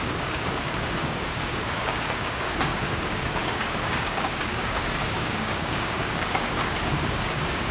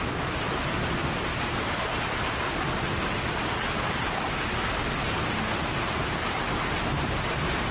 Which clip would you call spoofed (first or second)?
first